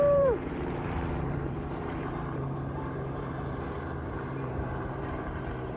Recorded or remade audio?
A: remade